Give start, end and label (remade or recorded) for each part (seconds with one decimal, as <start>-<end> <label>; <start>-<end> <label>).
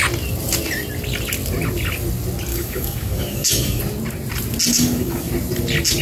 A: 0.0-2.5 recorded; 2.5-3.8 remade; 3.8-4.7 recorded; 4.7-5.3 remade; 5.3-6.0 recorded